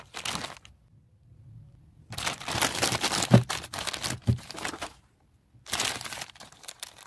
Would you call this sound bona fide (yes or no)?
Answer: yes